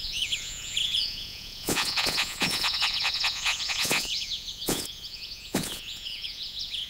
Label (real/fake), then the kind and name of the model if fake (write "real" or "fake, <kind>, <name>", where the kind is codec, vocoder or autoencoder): fake, vocoder, Vocos